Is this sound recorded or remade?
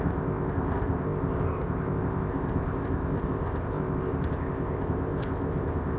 remade